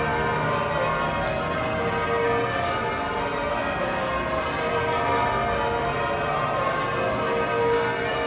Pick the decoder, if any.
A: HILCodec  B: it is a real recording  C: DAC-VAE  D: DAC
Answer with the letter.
B